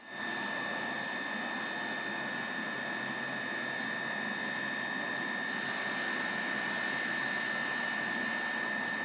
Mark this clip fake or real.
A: real